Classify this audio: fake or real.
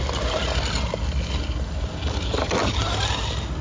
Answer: real